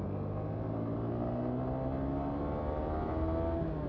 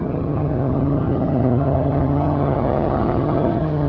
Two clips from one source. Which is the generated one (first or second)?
second